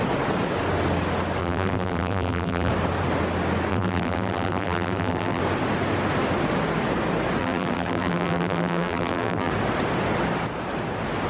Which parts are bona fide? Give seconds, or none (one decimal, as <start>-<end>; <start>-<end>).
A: 0.0-1.4; 2.7-3.7; 5.4-7.4; 9.5-11.3